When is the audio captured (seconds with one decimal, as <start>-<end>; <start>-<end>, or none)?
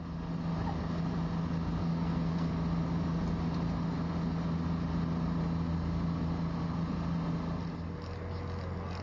0.0-1.8; 2.5-9.0